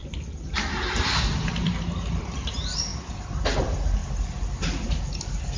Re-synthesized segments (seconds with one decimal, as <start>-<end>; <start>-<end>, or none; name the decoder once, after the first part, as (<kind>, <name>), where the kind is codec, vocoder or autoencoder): 0.0-2.9 (vocoder, BigVGAN v2); 3.6-4.0; 5.0-5.6